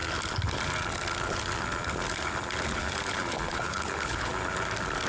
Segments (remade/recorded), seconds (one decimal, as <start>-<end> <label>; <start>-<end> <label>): 0.0-3.5 recorded; 3.5-4.3 remade; 4.3-5.1 recorded